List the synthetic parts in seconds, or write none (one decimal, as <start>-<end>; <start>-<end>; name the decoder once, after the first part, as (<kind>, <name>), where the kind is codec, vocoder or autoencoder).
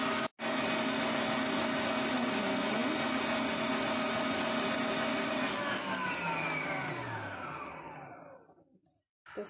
none